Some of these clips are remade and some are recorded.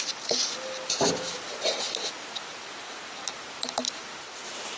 recorded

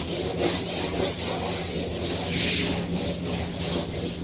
recorded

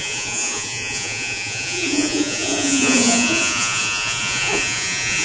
remade